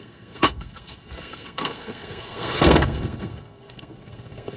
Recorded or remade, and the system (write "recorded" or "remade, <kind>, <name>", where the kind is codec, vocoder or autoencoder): remade, codec, SNAC